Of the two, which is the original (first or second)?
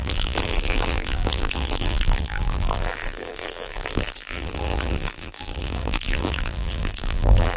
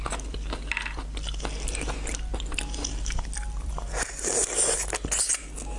second